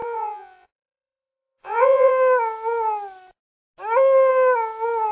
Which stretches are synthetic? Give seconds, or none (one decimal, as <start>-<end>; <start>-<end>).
0.0-2.1